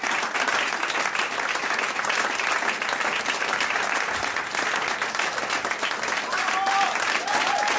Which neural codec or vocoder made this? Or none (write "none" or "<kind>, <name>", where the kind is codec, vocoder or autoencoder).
none